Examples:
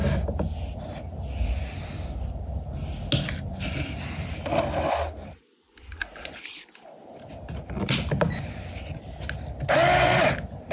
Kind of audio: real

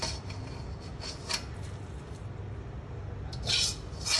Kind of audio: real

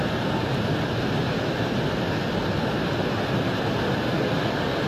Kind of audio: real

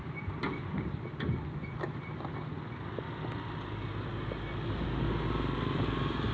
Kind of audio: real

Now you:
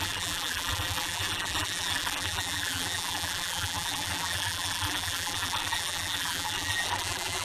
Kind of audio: fake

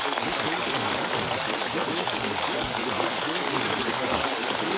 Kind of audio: fake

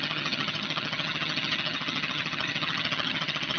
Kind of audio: fake